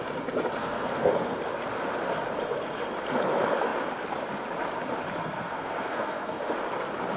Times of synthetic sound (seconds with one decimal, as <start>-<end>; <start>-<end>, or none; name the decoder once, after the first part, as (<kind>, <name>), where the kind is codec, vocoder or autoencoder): 0.6-1.1 (codec, SNAC); 5.2-6.4